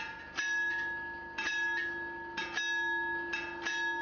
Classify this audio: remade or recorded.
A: recorded